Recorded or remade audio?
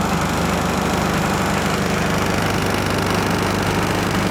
recorded